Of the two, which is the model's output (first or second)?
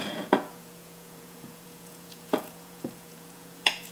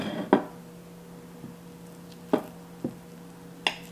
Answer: first